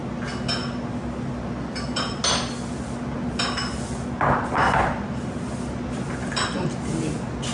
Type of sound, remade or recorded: recorded